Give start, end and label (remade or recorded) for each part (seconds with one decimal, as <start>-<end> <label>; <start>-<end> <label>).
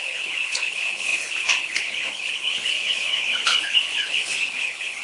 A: 0.0-5.0 remade